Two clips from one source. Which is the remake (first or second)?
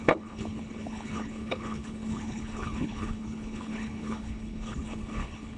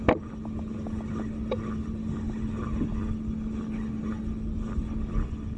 first